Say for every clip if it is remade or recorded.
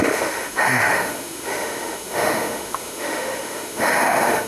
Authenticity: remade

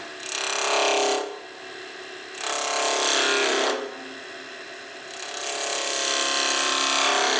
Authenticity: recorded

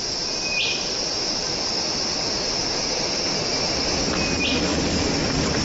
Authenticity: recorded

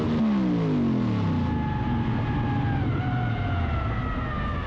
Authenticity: recorded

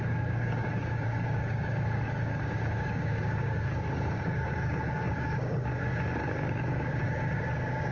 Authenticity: remade